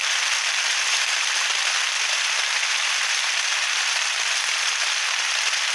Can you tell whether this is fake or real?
fake